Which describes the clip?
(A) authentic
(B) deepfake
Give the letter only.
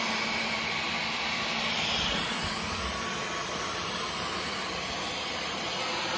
B